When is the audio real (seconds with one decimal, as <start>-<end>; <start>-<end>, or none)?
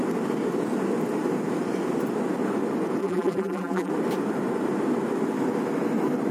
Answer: 0.0-3.0; 3.9-6.3